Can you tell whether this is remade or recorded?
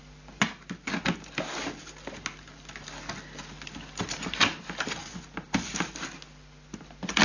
recorded